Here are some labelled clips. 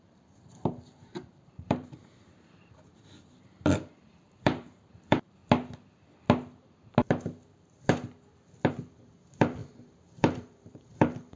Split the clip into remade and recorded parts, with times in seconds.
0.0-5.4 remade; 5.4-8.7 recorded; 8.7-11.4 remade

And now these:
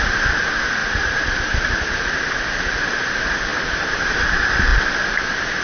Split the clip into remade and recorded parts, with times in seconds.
0.0-0.8 recorded; 0.8-2.3 remade; 2.3-3.5 recorded; 3.5-4.2 remade; 4.2-5.6 recorded

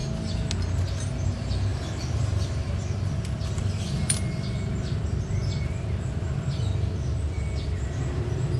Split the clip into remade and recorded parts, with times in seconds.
0.0-1.7 recorded; 1.7-6.6 remade; 6.6-8.6 recorded

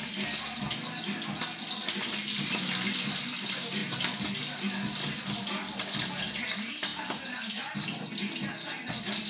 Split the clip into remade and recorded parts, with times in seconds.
0.0-9.3 recorded